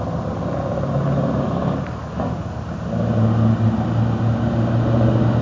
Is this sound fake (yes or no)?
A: no